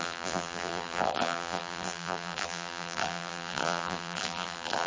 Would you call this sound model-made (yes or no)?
yes